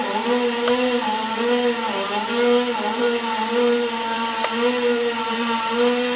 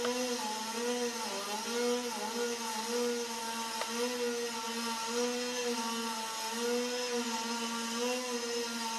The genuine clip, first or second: second